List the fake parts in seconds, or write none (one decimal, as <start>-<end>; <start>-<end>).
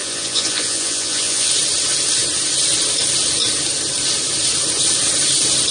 0.0-1.5